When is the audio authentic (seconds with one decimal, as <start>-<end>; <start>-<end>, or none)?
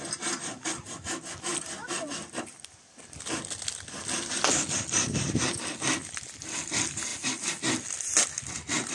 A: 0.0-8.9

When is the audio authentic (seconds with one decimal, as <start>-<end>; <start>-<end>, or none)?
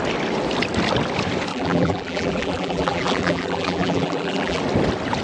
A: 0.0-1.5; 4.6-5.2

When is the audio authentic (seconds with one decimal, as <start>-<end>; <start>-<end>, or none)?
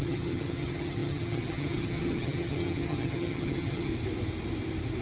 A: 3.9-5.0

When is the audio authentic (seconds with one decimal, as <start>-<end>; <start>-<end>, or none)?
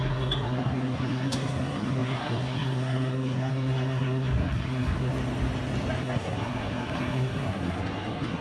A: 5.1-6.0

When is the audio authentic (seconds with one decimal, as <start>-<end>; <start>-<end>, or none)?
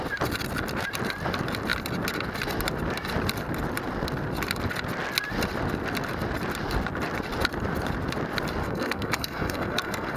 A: 0.0-8.6